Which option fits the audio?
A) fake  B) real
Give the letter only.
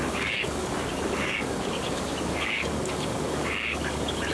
A